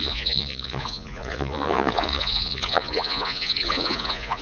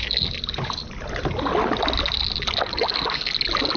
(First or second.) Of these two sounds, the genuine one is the second